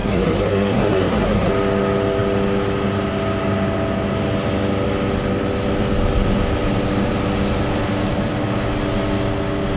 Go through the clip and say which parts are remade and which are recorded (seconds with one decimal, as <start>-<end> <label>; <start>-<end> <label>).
0.0-1.5 remade; 1.5-9.8 recorded